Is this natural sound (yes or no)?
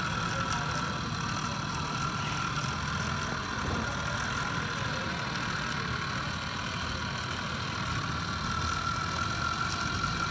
yes